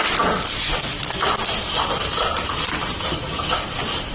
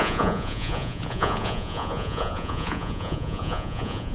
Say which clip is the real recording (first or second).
first